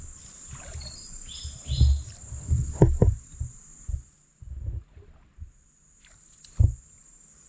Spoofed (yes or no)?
no